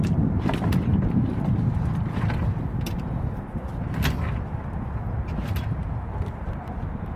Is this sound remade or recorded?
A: recorded